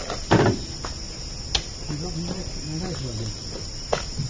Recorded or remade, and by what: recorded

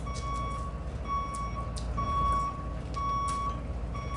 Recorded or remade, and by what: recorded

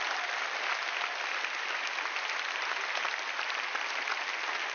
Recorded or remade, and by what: recorded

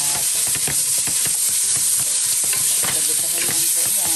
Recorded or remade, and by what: remade, vocoder, BigVGAN v2